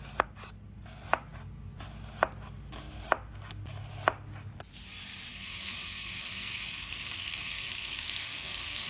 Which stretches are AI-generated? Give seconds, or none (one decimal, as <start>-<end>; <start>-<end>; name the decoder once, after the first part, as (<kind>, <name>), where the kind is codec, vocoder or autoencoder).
5.3-8.9 (codec, SNAC)